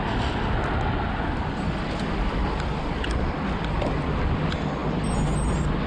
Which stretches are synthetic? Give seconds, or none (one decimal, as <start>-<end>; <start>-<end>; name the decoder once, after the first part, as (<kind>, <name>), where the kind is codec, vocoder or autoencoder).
none